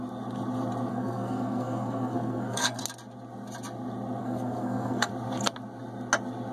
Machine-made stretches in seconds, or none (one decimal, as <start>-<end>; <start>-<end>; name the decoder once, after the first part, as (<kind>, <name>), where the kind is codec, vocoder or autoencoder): 0.9-2.8 (codec, SNAC); 4.2-5.1